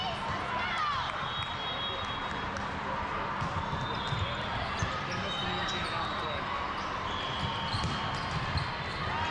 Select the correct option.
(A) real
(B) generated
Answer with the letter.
A